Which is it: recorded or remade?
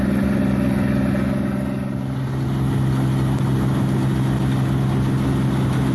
recorded